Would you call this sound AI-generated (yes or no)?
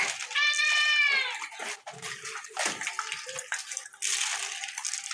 no